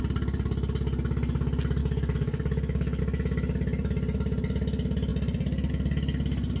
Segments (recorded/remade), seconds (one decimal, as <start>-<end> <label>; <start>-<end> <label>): 0.0-1.8 recorded; 1.8-3.0 remade; 3.0-6.6 recorded